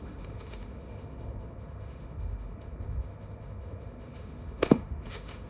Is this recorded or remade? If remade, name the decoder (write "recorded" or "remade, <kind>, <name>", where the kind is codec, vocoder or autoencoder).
remade, autoencoder, DAC-VAE